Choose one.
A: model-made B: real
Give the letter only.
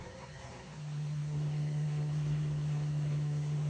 A